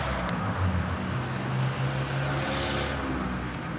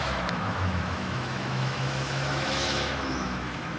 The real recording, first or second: first